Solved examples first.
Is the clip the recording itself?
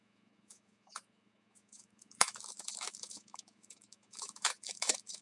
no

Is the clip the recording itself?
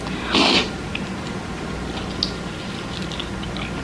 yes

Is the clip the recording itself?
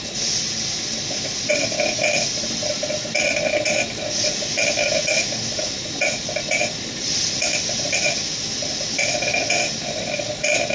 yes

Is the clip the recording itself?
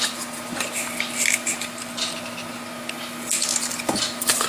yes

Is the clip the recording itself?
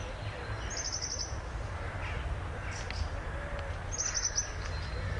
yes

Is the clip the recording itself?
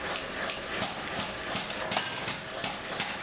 yes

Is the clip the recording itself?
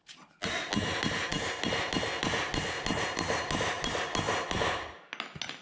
yes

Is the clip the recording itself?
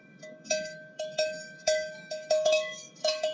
no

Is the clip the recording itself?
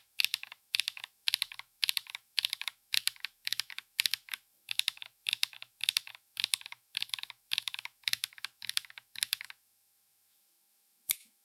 no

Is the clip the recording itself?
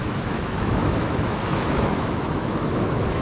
no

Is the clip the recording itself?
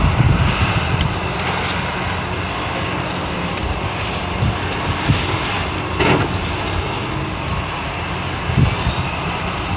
yes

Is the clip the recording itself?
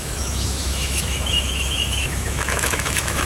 no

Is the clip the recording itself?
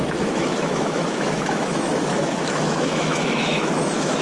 no